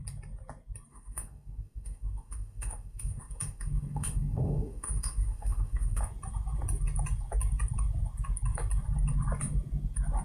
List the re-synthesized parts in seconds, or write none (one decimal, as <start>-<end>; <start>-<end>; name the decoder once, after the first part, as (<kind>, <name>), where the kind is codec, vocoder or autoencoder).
0.9-6.0 (autoencoder, DAC-VAE)